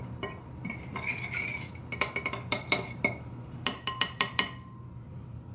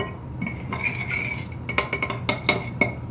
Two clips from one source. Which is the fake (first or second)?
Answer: first